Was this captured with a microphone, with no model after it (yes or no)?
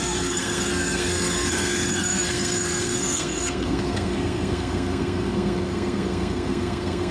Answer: no